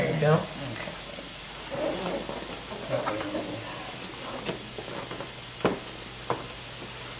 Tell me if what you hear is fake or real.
real